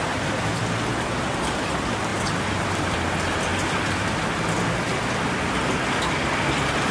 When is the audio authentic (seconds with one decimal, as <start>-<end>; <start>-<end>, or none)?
0.6-2.1; 2.8-6.9